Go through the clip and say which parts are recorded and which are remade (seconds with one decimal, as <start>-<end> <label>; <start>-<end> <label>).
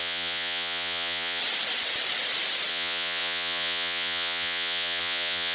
0.0-1.4 remade; 1.4-2.7 recorded; 2.7-5.5 remade